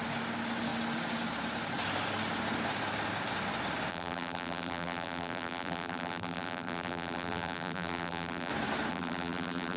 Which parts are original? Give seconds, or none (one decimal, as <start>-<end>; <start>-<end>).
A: 0.0-3.9; 8.5-8.9